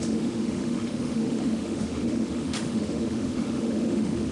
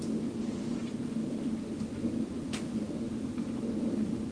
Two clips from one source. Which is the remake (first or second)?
first